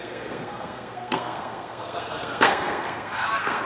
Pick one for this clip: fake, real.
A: fake